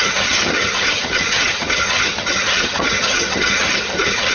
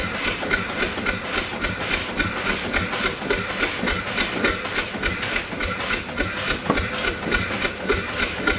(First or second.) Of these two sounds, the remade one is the first